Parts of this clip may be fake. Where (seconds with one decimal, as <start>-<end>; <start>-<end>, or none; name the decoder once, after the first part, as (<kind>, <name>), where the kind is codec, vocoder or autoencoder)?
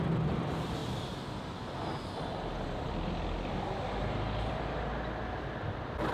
none